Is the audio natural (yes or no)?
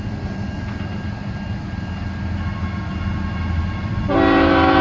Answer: yes